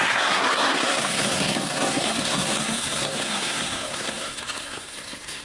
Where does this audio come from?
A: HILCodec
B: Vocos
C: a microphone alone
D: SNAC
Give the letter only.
D